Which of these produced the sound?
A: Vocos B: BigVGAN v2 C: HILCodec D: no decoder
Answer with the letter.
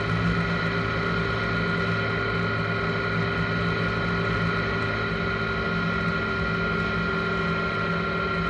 D